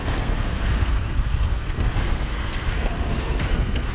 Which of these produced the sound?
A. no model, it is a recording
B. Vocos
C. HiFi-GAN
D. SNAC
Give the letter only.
D